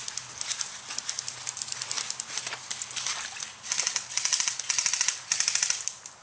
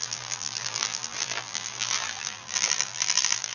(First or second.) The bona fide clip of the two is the first